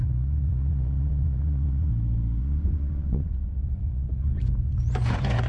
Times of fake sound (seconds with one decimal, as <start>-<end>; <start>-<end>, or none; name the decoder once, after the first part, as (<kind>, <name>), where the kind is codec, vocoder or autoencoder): 0.0-1.9 (vocoder, Vocos); 2.4-5.5

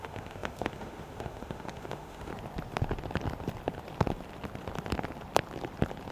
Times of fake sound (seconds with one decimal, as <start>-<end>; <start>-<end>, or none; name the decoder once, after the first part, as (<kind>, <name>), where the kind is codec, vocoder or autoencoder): 0.0-2.3 (autoencoder, DAC-VAE)

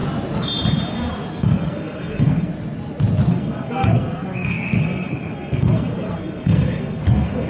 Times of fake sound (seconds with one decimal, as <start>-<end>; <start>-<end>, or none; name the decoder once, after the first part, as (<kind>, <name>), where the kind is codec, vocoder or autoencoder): 1.3-2.5 (codec, SNAC); 3.3-7.5